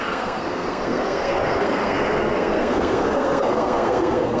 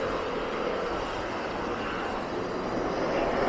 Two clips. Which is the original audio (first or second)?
second